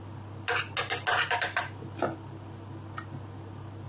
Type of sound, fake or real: real